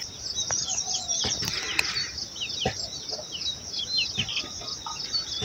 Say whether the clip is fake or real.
real